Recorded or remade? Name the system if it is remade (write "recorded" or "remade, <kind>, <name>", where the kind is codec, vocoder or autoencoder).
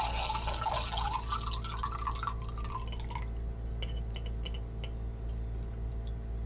recorded